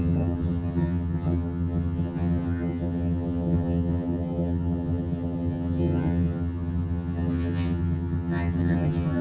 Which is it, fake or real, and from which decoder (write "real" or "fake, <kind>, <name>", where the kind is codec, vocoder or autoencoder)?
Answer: fake, vocoder, HiFi-GAN